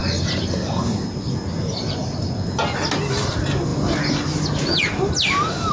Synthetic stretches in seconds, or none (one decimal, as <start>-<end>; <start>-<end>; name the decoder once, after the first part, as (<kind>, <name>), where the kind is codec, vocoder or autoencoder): none